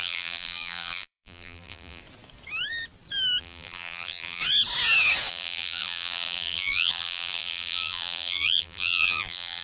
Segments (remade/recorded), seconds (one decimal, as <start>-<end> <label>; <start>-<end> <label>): 0.0-2.0 remade; 2.0-3.4 recorded; 3.4-4.4 remade; 4.4-5.3 recorded; 5.3-9.6 remade